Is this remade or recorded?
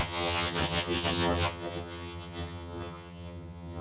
remade